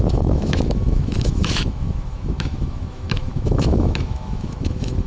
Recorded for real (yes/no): no